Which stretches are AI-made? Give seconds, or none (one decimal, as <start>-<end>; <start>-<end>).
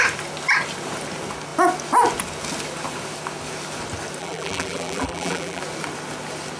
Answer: 4.2-5.6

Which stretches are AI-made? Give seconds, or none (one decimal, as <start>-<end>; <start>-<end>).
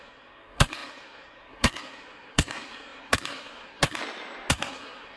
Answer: 0.0-4.0; 4.5-5.2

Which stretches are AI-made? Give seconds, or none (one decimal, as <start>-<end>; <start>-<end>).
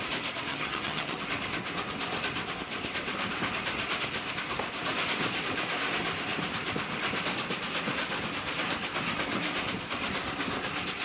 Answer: 0.5-1.2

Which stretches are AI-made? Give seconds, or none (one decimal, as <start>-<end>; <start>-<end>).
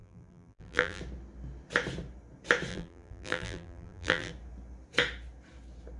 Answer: 0.0-1.0; 2.7-4.3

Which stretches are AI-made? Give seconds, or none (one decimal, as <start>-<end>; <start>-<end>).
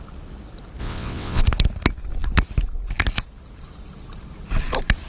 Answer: 0.8-1.4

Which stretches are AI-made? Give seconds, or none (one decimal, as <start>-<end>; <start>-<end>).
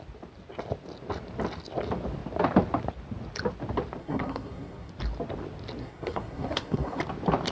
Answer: 4.0-4.9; 5.8-7.0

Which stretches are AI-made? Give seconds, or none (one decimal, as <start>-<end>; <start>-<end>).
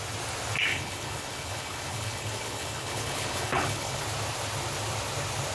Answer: 0.7-4.0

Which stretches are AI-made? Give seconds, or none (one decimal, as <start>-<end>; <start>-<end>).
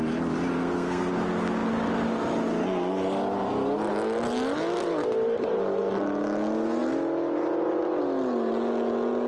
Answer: 0.6-1.1